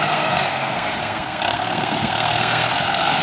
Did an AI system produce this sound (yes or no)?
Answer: yes